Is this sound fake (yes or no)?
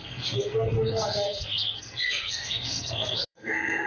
yes